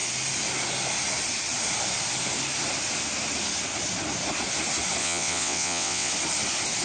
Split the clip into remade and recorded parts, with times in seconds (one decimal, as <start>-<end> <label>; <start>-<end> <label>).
0.0-5.0 recorded; 5.0-6.1 remade; 6.1-6.8 recorded